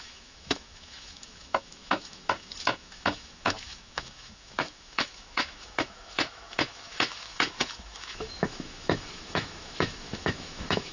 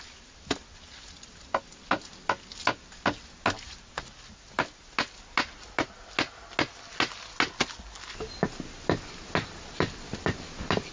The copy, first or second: first